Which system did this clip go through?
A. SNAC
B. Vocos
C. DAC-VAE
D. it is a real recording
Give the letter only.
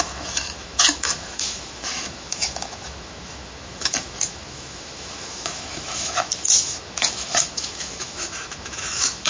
C